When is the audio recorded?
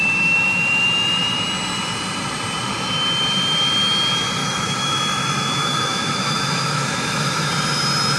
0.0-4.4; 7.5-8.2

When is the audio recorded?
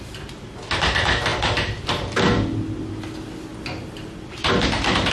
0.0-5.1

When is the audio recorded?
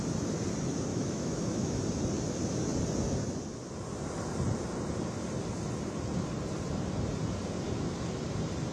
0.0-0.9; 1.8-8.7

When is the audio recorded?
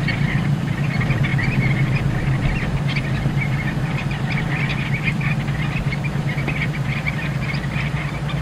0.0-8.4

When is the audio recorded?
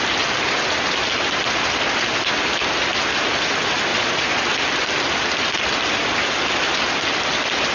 0.0-3.9; 4.4-7.7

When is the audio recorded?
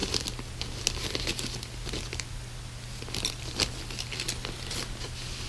0.0-5.5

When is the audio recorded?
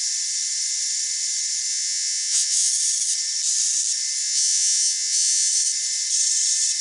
0.0-1.7; 2.7-4.2; 5.5-6.8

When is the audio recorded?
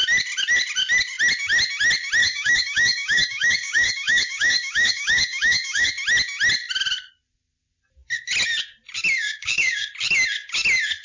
0.0-2.2; 5.9-9.2; 9.9-11.0